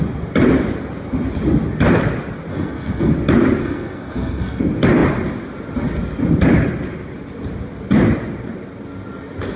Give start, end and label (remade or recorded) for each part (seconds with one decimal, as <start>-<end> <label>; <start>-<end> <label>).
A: 0.0-2.5 recorded; 2.5-3.1 remade; 3.1-3.6 recorded; 3.6-4.6 remade; 4.6-9.6 recorded